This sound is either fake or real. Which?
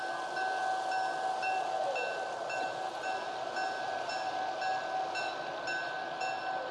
real